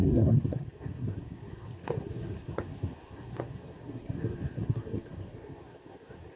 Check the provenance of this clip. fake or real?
fake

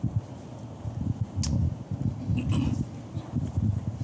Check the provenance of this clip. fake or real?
real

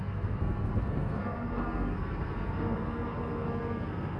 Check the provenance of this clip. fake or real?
fake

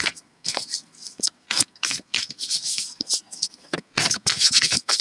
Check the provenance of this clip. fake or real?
fake